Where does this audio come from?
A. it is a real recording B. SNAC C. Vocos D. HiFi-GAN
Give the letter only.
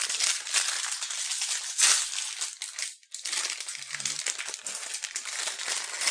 A